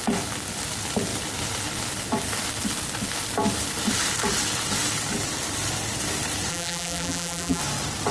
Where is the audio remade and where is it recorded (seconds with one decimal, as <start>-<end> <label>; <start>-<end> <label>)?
0.0-6.5 recorded; 6.5-7.6 remade; 7.6-8.1 recorded